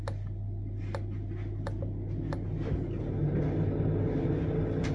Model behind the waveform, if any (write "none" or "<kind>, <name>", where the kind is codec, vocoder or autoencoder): none